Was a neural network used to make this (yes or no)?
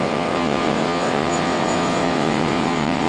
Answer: yes